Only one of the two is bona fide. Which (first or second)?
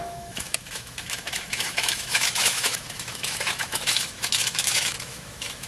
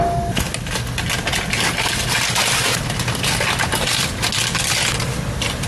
second